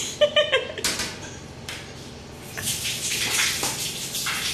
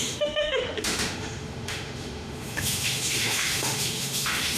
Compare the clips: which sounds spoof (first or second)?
second